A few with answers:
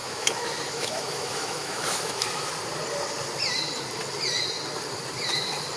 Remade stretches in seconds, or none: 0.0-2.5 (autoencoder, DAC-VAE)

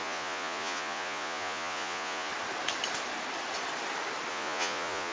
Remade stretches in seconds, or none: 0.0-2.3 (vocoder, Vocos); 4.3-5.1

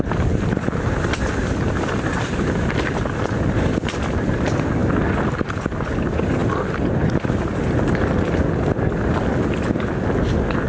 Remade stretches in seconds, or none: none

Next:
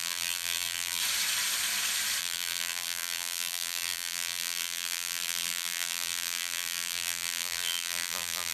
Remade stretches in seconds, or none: 0.0-1.0 (vocoder, BigVGAN v2); 2.2-8.5